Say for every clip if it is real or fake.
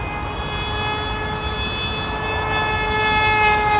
real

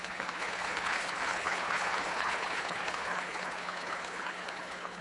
fake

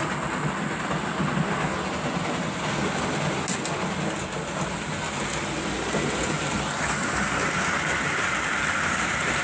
real